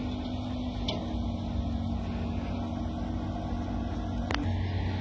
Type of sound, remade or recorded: recorded